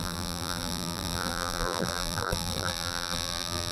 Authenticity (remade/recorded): remade